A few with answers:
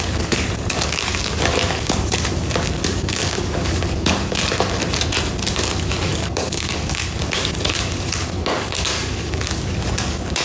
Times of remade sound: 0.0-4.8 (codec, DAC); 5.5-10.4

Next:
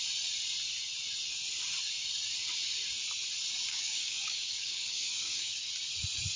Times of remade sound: 3.7-5.7 (codec, DAC)

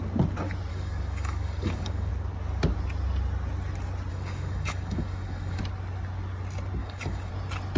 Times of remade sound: 0.7-2.1 (codec, DAC); 4.1-5.6; 6.8-7.3

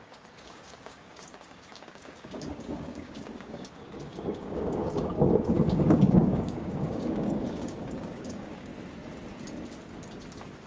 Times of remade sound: 0.0-8.7 (codec, DAC)